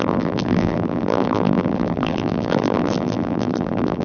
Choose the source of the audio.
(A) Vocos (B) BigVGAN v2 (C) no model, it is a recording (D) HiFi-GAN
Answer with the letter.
B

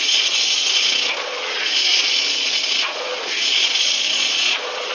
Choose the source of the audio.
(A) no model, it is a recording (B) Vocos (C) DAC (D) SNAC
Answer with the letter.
B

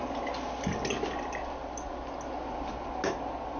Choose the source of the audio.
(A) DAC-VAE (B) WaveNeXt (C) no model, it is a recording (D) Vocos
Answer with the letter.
C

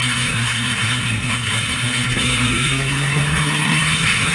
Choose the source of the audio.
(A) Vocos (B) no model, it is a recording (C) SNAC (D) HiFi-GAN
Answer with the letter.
C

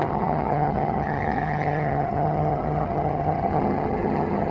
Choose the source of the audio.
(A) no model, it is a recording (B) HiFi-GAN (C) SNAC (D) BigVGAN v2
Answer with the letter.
B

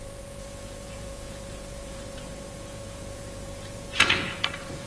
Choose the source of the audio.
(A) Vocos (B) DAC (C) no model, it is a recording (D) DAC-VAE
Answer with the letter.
A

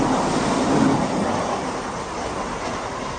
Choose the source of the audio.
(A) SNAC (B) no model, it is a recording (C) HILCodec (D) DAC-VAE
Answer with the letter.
B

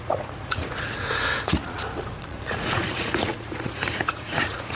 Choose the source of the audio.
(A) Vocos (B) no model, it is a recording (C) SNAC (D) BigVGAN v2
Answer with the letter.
A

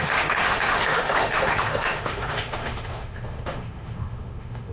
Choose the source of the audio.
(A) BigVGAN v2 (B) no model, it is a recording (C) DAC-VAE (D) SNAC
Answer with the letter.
C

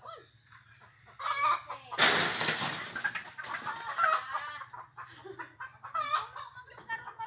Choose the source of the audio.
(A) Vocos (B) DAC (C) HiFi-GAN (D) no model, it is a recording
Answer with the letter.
D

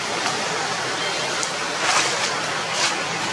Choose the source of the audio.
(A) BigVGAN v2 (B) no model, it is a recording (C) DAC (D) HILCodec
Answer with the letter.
B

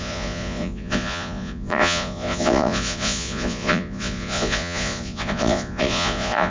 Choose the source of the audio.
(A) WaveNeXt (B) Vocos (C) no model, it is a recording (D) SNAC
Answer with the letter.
B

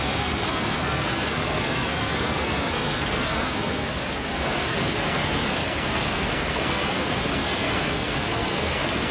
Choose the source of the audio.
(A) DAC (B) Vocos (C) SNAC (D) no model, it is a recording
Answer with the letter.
C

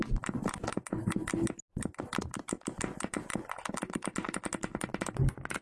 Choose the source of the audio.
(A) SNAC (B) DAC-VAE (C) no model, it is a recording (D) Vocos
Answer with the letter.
C